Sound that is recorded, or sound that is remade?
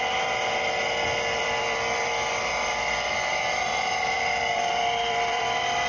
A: remade